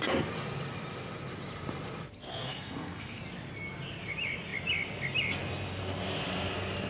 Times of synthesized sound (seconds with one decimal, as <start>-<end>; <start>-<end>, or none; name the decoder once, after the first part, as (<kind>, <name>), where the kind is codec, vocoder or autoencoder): 2.3-3.2 (codec, SNAC)